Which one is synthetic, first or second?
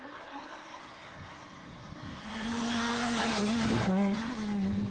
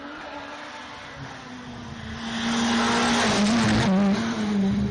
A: first